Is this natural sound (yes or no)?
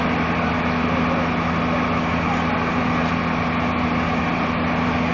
yes